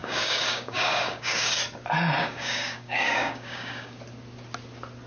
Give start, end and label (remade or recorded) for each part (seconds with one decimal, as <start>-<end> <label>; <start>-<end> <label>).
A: 0.0-1.6 remade; 1.6-2.2 recorded; 2.2-4.0 remade; 4.0-5.1 recorded